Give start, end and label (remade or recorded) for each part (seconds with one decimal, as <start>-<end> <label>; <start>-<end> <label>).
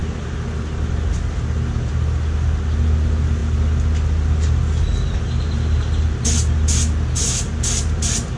0.0-8.4 recorded